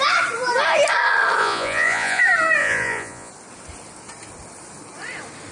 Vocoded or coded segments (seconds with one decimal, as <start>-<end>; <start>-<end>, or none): 1.4-2.2; 2.6-3.3